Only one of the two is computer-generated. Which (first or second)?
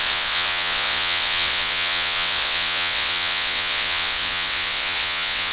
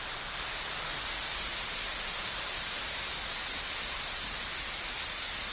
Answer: first